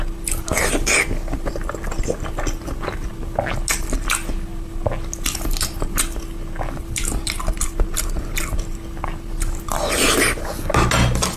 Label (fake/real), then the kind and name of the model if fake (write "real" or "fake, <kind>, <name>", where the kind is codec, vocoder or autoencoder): real